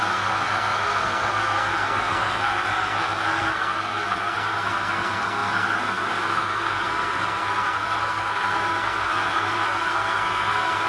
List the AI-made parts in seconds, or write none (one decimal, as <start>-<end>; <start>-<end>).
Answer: 0.0-10.9